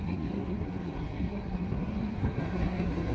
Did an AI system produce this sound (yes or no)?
yes